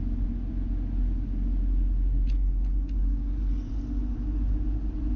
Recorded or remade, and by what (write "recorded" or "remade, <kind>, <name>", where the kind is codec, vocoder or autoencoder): recorded